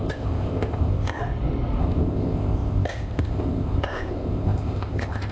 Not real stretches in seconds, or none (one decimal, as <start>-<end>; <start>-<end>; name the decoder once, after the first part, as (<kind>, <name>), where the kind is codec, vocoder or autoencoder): 0.0-1.2 (codec, ZipCodec); 1.8-5.3